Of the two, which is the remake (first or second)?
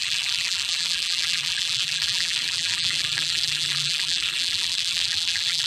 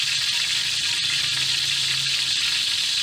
first